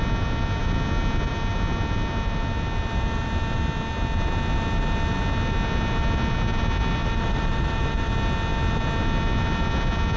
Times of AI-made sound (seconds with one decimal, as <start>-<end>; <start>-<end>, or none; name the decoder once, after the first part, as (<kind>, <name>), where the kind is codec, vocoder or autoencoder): 7.0-8.1 (vocoder, BigVGAN v2)